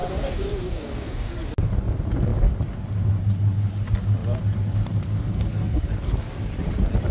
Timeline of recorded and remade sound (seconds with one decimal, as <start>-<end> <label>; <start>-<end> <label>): 0.0-1.3 remade; 1.3-7.1 recorded